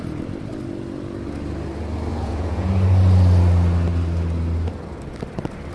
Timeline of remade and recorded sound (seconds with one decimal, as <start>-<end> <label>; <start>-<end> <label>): 0.0-2.1 recorded; 2.1-2.7 remade; 2.7-5.7 recorded